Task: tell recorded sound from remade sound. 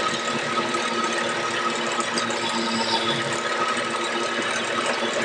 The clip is recorded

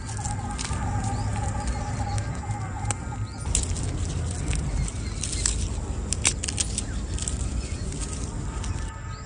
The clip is recorded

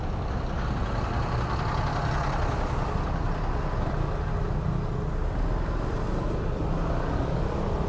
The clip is recorded